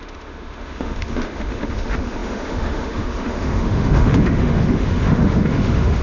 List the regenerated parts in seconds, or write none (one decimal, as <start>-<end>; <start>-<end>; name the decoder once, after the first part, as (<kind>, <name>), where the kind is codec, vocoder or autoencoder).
0.0-6.0 (autoencoder, DAC-VAE)